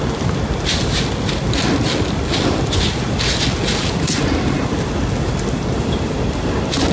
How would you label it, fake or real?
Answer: real